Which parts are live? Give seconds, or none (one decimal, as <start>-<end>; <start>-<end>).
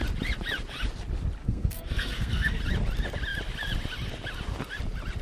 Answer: 0.0-1.4; 2.6-5.2